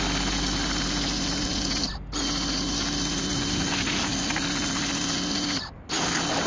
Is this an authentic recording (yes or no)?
yes